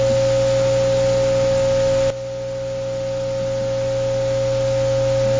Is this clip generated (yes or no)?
no